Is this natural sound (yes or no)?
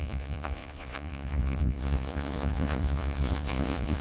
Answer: no